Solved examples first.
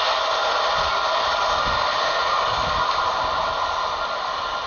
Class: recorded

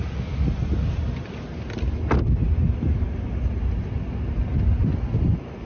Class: recorded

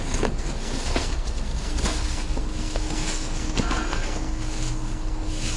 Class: remade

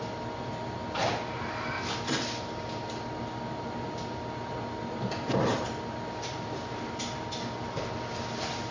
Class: recorded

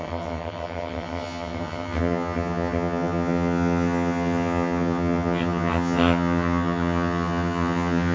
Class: remade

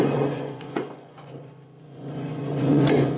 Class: remade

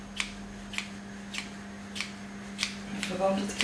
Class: recorded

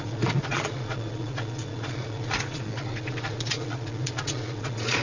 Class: remade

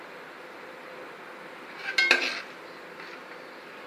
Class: recorded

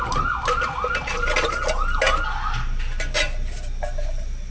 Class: recorded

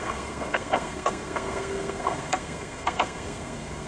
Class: remade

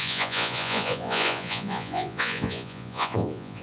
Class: remade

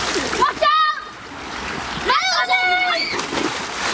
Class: recorded